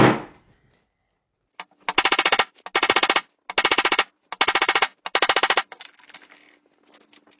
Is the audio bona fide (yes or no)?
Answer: yes